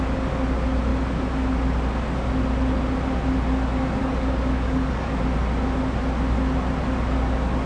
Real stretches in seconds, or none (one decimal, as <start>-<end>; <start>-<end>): 0.0-4.0; 5.2-7.7